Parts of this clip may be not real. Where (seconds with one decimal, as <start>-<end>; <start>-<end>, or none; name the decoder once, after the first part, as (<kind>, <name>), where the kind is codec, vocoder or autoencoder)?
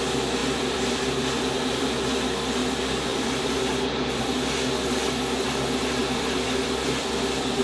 0.4-2.0 (vocoder, BigVGAN v2); 3.1-4.2; 6.0-7.6